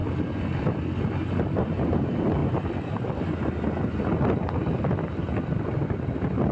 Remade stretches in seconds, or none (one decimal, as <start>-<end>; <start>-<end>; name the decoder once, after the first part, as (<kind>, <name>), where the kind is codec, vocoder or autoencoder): none